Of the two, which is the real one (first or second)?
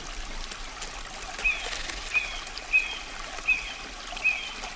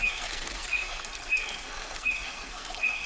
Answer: first